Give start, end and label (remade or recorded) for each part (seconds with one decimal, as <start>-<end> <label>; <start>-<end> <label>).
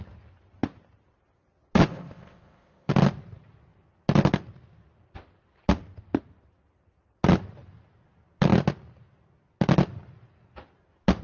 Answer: 0.0-1.9 recorded; 1.9-2.9 remade; 2.9-11.2 recorded